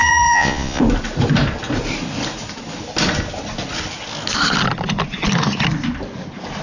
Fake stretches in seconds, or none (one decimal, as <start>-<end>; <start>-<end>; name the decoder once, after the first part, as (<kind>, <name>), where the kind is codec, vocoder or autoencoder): 0.0-0.8 (vocoder, Vocos)